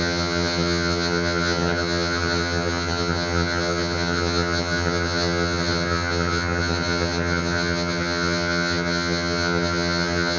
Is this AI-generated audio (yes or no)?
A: yes